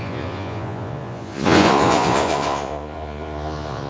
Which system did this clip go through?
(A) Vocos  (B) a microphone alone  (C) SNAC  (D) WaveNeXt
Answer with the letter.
A